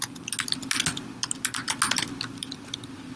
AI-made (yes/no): no